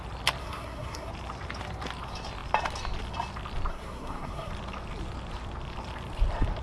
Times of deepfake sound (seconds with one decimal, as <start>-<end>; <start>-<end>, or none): 0.4-1.1; 3.7-4.5